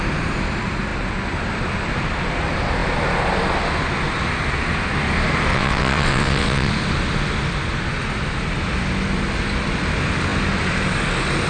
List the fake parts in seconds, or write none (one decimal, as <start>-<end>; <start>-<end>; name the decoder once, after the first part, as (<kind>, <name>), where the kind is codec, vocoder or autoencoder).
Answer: 5.5-6.7 (vocoder, WaveNeXt)